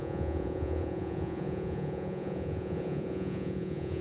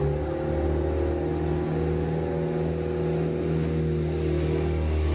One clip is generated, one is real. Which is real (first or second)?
second